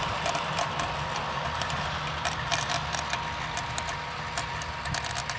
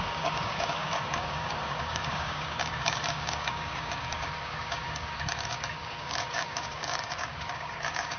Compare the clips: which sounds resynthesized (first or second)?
second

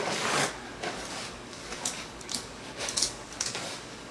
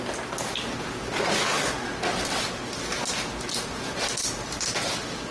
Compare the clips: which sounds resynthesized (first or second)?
first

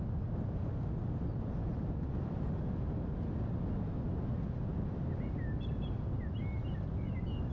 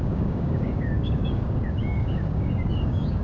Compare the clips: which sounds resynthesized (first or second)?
second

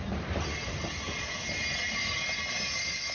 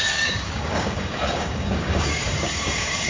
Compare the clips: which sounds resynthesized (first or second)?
second